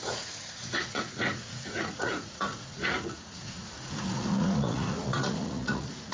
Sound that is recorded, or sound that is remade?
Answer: remade